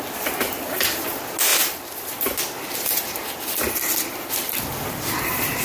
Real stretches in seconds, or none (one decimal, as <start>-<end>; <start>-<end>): 0.0-5.6